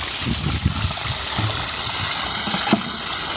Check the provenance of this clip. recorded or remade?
recorded